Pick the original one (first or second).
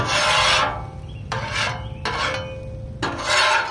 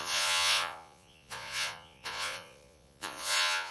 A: first